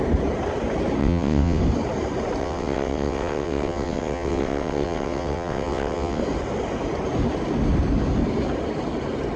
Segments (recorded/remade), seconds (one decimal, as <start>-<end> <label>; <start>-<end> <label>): 0.0-1.0 recorded; 1.0-1.6 remade; 1.6-2.4 recorded; 2.4-6.2 remade; 6.2-9.4 recorded